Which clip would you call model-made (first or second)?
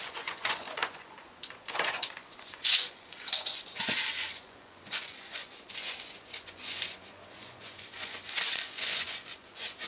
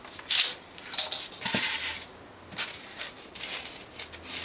first